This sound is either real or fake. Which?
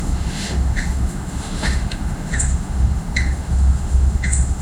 fake